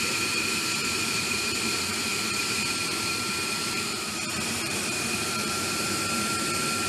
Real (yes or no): no